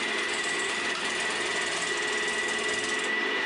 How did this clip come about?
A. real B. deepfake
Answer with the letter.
A